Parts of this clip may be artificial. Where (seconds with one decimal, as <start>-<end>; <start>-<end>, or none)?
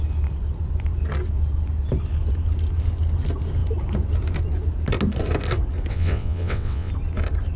5.9-6.9